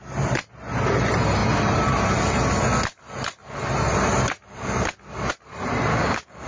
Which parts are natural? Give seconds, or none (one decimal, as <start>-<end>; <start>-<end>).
0.0-5.9